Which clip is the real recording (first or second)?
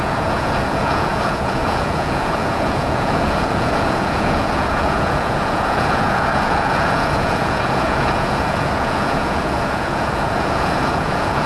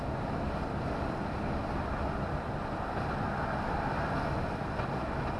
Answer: second